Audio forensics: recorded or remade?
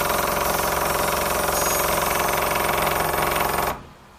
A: recorded